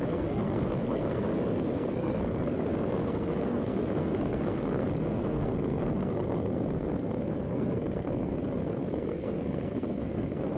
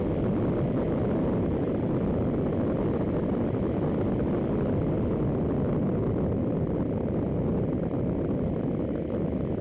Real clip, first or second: second